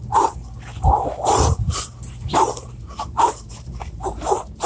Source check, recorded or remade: remade